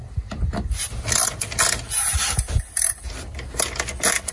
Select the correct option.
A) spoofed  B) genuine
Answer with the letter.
B